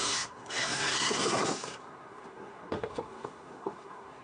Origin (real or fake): fake